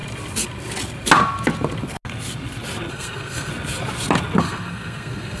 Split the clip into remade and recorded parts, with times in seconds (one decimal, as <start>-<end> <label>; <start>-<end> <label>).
0.0-2.9 recorded; 2.9-3.5 remade; 3.5-4.4 recorded; 4.4-5.4 remade

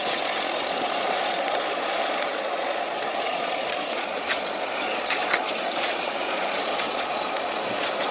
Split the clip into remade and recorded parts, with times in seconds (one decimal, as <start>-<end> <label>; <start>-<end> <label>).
0.0-8.1 remade

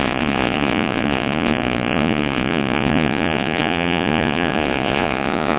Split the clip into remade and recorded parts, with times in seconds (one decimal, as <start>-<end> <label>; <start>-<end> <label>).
0.0-5.6 remade

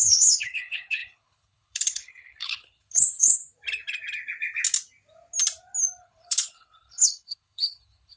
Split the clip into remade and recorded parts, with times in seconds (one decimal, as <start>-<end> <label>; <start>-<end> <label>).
0.0-3.4 remade; 3.4-6.0 recorded; 6.0-8.2 remade